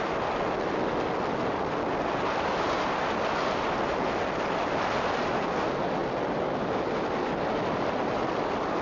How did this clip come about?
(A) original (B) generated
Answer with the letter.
A